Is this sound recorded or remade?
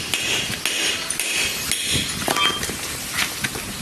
recorded